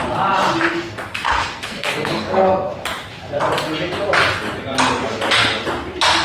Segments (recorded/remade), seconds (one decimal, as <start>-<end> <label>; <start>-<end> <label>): 0.0-0.7 recorded; 0.7-2.7 remade; 2.7-6.2 recorded